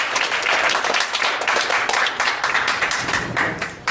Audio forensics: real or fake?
fake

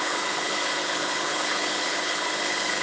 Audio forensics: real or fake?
fake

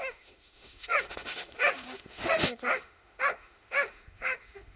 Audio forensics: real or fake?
fake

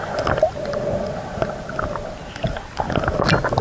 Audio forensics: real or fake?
real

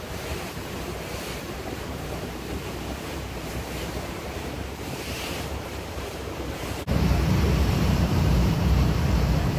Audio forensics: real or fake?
fake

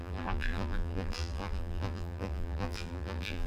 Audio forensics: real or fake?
fake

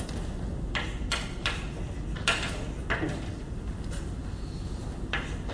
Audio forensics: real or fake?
real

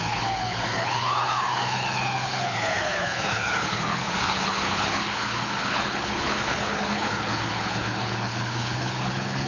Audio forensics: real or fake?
fake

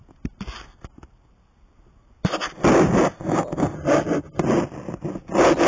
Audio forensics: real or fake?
real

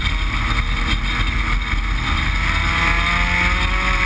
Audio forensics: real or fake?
real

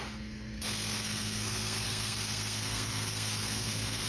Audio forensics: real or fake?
fake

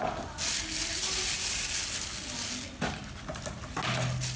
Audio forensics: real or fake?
real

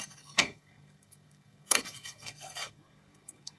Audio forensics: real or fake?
fake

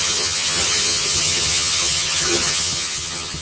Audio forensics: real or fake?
fake